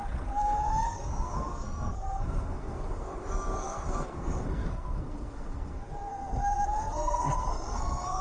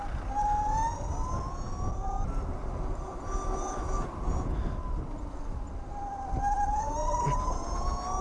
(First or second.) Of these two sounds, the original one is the second